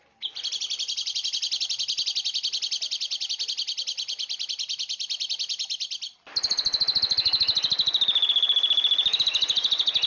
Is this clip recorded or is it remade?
recorded